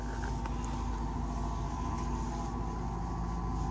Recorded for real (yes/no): yes